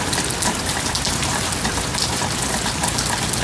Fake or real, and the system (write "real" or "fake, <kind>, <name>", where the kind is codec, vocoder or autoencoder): fake, vocoder, BigVGAN v2